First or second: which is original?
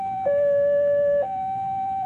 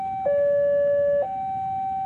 second